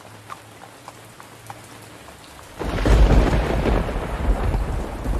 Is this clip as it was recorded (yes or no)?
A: yes